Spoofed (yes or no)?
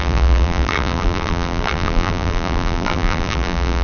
yes